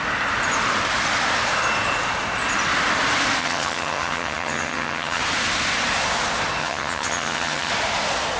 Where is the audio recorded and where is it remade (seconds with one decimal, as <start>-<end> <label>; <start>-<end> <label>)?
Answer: 0.0-3.4 recorded; 3.4-5.2 remade; 5.2-6.6 recorded; 6.6-7.7 remade; 7.7-8.4 recorded

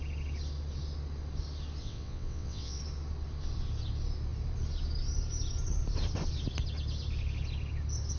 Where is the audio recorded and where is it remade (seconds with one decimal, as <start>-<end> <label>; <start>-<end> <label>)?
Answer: 0.0-1.8 recorded; 1.8-2.8 remade; 2.8-8.2 recorded

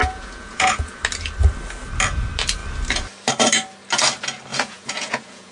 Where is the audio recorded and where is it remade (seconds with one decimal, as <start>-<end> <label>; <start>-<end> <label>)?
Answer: 0.0-1.0 remade; 1.0-4.5 recorded; 4.5-5.5 remade